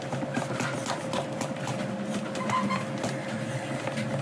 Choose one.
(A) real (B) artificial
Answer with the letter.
A